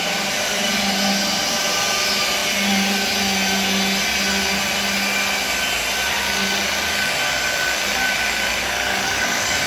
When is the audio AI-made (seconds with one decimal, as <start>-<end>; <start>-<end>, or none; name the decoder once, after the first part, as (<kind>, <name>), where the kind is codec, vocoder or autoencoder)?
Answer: 8.6-9.7 (codec, DAC)